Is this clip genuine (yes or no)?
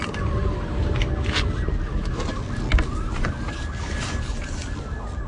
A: yes